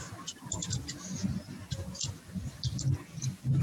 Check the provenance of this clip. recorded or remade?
recorded